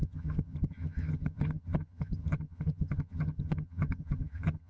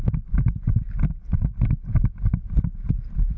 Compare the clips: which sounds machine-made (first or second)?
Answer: first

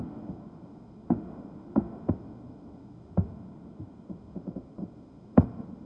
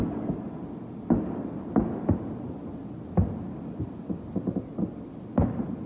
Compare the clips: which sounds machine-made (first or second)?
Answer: first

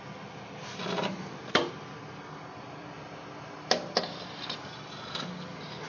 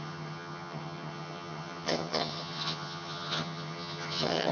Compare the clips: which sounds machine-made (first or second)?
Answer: second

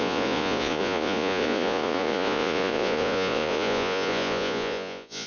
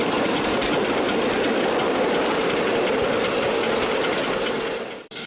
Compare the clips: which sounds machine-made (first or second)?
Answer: first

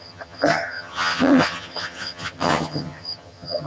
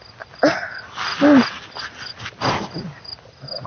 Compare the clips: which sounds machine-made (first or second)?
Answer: first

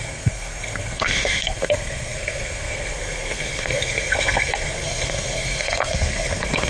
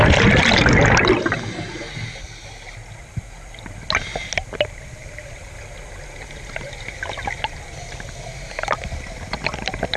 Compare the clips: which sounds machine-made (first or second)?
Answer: first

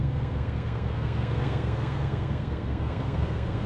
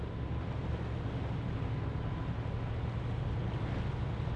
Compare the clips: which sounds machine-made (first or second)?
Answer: first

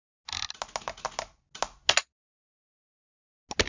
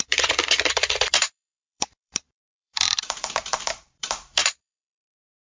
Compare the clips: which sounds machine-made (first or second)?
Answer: second